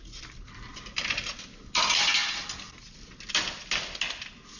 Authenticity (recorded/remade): recorded